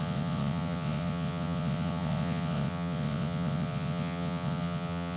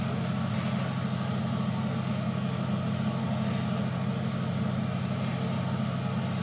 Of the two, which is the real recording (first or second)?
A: second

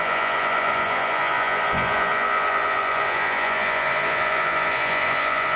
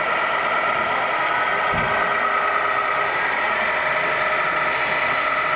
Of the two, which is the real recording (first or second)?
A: second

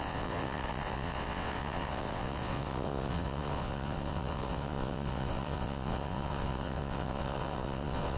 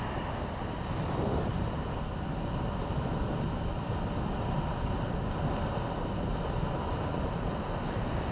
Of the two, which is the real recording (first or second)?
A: second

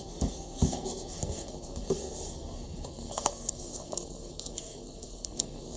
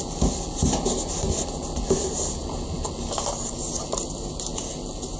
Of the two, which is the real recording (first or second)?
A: second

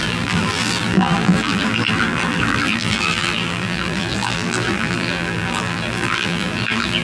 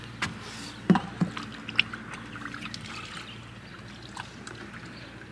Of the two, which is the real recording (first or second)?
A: second